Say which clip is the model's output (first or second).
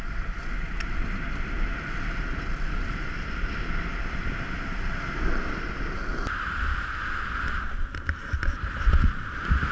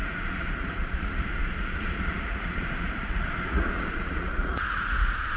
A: second